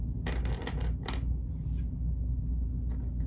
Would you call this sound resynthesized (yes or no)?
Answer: no